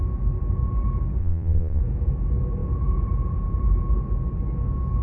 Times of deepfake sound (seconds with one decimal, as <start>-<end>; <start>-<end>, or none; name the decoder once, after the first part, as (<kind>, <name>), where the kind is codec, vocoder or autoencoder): 1.2-1.8 (vocoder, Vocos)

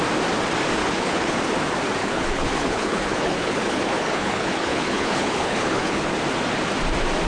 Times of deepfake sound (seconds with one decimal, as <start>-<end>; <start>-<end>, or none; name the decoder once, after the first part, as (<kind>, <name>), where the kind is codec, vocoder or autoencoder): 0.8-1.4 (codec, HILCodec); 2.0-6.1

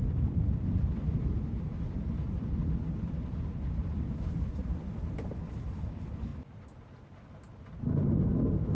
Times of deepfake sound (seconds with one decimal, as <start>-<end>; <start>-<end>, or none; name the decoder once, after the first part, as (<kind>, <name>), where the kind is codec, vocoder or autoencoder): none

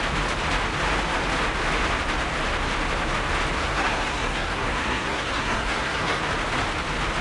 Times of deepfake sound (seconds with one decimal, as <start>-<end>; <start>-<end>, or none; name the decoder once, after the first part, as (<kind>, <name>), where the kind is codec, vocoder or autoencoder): 3.6-6.2 (codec, SNAC)

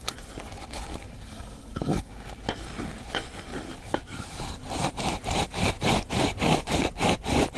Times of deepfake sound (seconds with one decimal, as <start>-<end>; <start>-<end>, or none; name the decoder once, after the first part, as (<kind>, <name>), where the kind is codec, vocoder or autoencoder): 0.0-0.9 (vocoder, Vocos); 3.0-3.5; 5.7-7.6

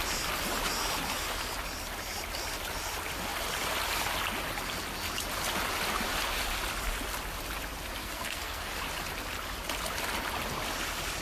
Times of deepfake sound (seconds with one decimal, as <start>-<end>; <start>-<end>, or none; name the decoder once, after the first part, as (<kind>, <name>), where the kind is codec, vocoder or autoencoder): 8.0-8.7 (codec, SNAC)

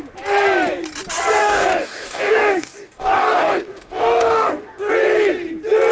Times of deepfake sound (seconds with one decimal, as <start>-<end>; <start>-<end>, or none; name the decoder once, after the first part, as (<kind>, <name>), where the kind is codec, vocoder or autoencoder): 1.4-4.9 (codec, DAC)